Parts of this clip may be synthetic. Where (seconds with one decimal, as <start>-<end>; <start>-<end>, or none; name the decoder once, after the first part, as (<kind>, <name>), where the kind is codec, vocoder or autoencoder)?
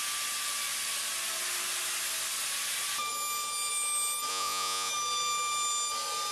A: 4.3-4.9 (vocoder, Vocos)